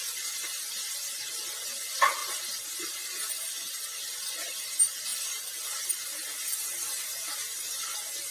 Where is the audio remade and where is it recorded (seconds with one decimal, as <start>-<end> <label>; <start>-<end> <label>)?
0.0-8.3 recorded